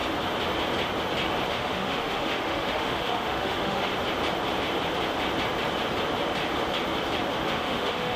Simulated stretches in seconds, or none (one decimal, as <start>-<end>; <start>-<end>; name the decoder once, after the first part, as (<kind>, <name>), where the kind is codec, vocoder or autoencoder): 1.5-3.9 (autoencoder, DAC-VAE); 7.4-8.2